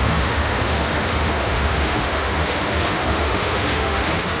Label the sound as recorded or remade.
remade